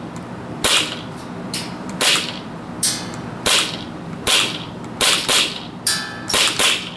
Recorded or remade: remade